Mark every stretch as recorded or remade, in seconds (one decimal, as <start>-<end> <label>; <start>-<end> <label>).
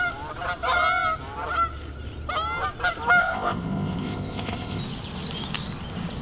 0.0-3.2 recorded; 3.2-4.8 remade; 4.8-6.2 recorded